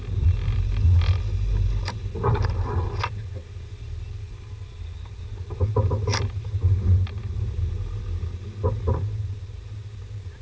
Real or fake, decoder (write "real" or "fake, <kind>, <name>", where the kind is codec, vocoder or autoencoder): real